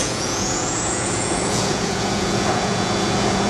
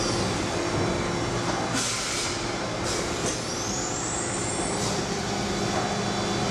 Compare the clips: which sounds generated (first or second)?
first